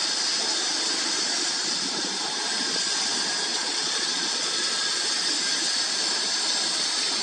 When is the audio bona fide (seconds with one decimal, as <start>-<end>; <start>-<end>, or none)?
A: 0.0-3.5; 5.0-7.2